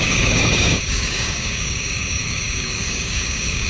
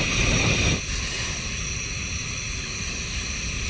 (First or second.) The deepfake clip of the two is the first